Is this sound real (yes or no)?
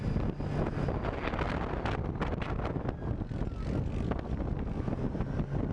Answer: yes